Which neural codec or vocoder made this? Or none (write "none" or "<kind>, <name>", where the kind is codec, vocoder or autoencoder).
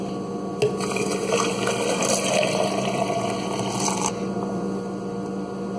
none